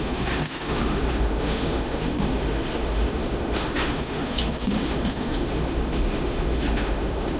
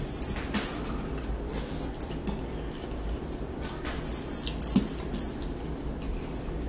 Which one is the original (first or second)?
second